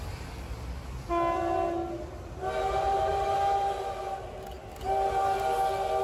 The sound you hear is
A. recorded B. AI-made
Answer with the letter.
A